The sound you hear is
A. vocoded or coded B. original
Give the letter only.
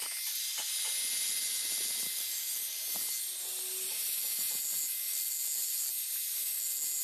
B